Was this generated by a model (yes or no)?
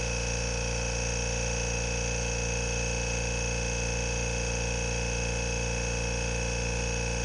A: no